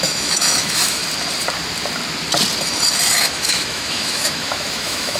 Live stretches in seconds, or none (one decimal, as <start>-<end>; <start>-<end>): 1.0-3.2

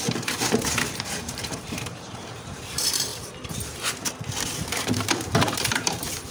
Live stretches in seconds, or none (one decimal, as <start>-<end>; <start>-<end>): 3.1-4.6

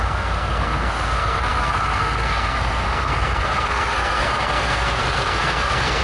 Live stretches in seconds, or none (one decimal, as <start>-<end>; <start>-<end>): none

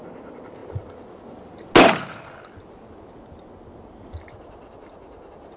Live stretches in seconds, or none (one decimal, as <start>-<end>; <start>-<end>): 0.0-5.6

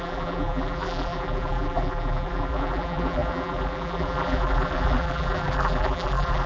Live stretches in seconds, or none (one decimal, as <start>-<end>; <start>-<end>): none

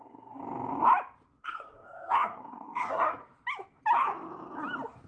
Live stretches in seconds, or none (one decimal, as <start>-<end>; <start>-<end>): 0.4-1.4; 3.2-5.1

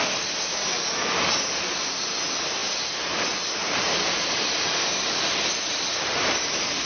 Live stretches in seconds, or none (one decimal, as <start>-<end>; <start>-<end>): 0.0-2.6